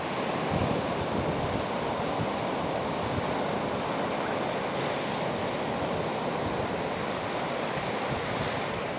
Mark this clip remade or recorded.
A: recorded